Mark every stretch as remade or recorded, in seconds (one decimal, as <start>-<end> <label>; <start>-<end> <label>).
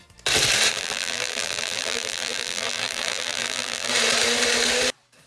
0.0-0.7 recorded; 0.7-3.9 remade; 3.9-5.3 recorded